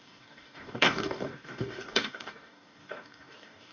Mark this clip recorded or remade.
remade